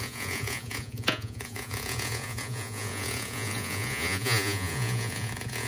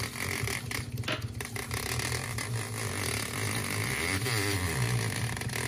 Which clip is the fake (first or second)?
first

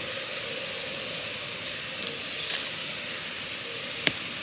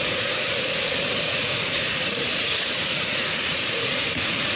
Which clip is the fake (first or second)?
second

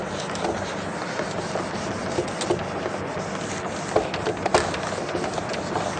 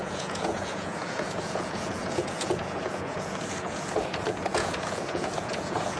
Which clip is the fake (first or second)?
second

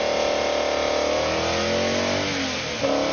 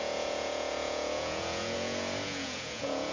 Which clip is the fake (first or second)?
second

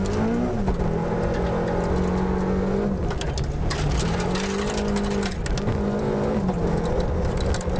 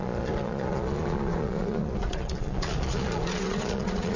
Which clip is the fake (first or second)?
second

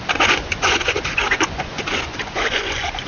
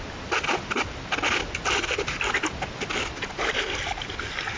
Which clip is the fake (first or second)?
first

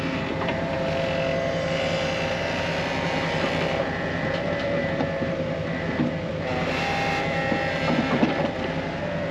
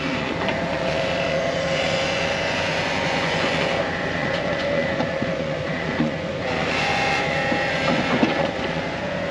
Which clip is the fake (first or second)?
second